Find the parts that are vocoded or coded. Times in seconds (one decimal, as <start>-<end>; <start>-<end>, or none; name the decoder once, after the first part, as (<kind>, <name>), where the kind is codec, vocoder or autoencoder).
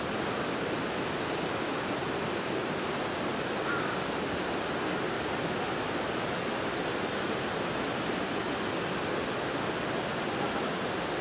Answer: none